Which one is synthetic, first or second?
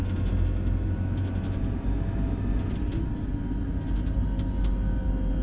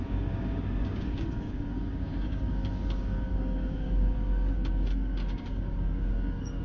second